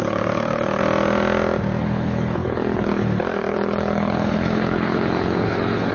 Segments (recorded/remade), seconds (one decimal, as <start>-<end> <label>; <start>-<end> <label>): 0.0-0.8 remade; 0.8-1.8 recorded; 1.8-5.9 remade

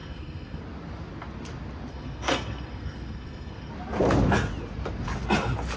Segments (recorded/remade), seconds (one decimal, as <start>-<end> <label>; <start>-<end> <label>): 0.0-0.6 remade; 0.6-1.9 recorded; 1.9-3.7 remade; 3.7-5.8 recorded

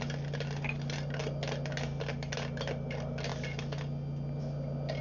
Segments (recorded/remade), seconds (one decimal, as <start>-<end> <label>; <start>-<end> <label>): 0.0-5.0 recorded

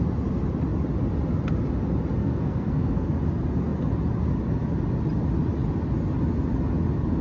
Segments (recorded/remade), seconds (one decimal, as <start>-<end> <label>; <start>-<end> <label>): 0.0-2.2 recorded; 2.2-3.2 remade; 3.2-7.2 recorded

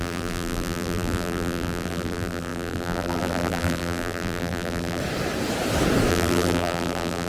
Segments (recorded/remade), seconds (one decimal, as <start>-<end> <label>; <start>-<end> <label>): 0.0-5.0 remade; 5.0-6.1 recorded; 6.1-7.3 remade

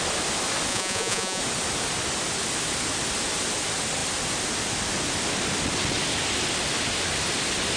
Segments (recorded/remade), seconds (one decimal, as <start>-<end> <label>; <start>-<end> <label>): 0.0-0.7 recorded; 0.7-1.4 remade; 1.4-7.8 recorded

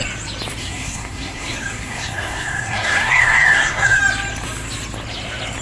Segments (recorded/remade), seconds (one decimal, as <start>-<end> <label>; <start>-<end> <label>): 0.0-0.6 recorded; 0.6-4.0 remade; 4.0-5.6 recorded